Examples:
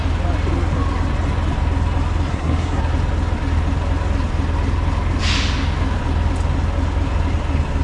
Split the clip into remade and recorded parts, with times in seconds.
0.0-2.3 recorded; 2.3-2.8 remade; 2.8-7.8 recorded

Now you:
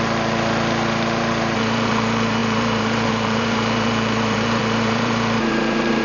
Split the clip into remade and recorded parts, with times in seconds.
0.0-6.0 remade

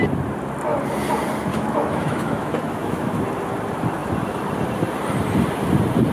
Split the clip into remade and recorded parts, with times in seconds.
0.0-1.5 recorded; 1.5-3.2 remade; 3.2-6.1 recorded

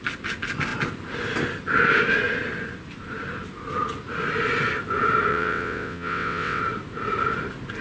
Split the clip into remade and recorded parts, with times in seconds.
0.0-5.3 recorded; 5.3-6.6 remade; 6.6-7.8 recorded

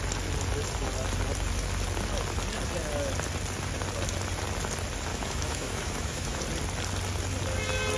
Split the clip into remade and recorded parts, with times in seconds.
0.0-5.1 recorded; 5.1-6.4 remade; 6.4-8.0 recorded